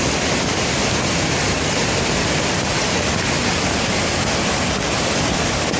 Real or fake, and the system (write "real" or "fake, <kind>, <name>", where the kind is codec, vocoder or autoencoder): real